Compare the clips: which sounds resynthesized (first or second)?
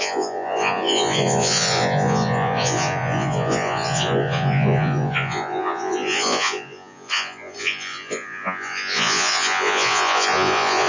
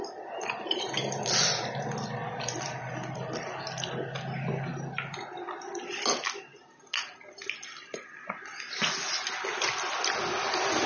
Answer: first